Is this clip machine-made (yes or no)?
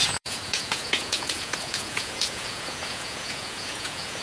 yes